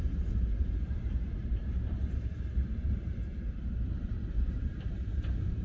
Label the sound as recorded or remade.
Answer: remade